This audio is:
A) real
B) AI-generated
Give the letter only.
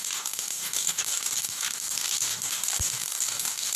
B